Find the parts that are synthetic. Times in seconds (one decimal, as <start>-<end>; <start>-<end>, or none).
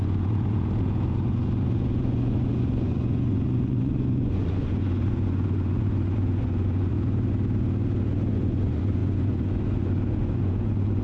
0.0-6.9; 8.3-11.0